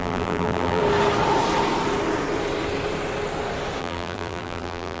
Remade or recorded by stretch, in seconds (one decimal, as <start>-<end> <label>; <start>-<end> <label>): 0.0-0.8 remade; 0.8-3.8 recorded; 3.8-5.0 remade